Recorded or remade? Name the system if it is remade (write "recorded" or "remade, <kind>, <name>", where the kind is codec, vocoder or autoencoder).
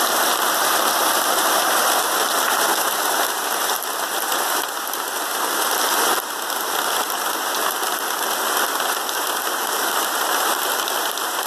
recorded